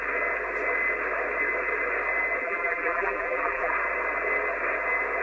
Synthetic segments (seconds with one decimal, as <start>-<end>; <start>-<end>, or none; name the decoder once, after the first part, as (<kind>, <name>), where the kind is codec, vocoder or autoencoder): 2.4-3.7 (vocoder, BigVGAN v2)